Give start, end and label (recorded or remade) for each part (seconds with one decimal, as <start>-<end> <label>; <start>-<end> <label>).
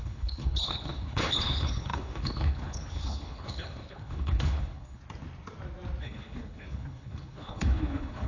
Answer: 0.0-5.0 remade; 5.0-6.0 recorded; 6.0-8.3 remade